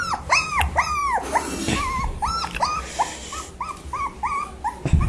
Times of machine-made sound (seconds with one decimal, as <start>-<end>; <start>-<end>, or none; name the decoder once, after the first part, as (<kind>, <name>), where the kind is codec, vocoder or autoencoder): none